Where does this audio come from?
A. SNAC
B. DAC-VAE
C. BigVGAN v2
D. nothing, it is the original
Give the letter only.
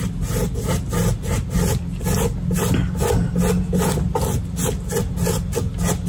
D